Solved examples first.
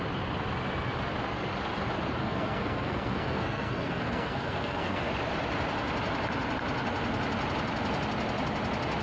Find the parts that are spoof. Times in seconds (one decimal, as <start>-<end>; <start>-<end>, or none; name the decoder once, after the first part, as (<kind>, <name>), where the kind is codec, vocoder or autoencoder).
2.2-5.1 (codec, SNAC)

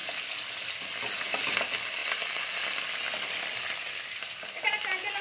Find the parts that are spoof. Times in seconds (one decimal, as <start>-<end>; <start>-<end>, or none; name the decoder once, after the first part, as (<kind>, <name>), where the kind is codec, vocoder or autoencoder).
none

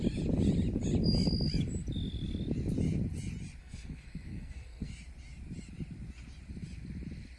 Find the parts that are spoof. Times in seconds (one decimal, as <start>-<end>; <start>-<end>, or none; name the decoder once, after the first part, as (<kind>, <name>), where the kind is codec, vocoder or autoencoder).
3.6-4.9 (codec, SNAC)

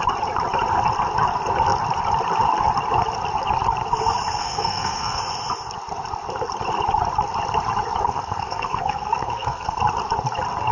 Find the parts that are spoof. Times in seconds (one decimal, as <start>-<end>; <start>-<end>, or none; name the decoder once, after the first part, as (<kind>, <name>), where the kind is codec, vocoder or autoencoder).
4.4-5.2 (codec, SNAC); 8.0-9.8

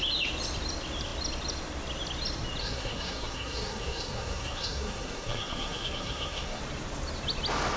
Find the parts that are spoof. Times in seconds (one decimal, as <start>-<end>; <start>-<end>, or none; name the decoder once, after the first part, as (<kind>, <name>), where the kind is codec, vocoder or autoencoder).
2.6-6.6 (codec, SNAC)

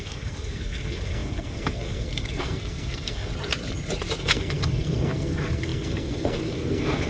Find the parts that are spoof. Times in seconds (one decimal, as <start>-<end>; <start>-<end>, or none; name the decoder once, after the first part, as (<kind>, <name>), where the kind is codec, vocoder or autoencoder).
0.0-3.3 (codec, SNAC); 4.2-7.1

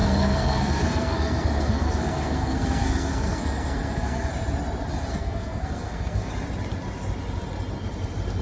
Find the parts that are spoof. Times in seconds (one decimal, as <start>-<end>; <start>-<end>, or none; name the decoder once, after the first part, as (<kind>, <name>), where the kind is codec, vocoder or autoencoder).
0.0-4.3 (codec, SNAC); 5.1-6.3

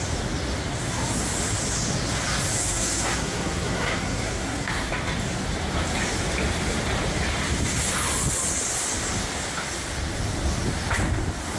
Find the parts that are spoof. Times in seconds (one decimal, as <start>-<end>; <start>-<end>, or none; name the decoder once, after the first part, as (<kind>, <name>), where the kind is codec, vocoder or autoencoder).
2.6-4.9 (codec, SNAC)